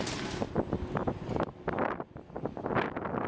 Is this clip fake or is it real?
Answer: real